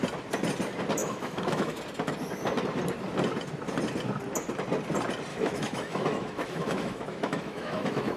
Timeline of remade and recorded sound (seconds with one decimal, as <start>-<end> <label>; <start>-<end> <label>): 0.0-1.0 recorded; 1.0-1.8 remade; 1.8-5.3 recorded; 5.3-8.2 remade